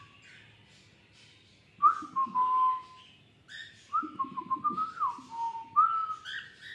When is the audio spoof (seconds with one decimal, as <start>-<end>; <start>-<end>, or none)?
none